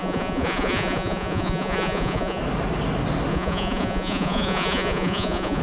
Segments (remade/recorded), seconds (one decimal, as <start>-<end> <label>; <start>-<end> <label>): 0.0-2.4 remade; 2.4-3.3 recorded; 3.3-5.6 remade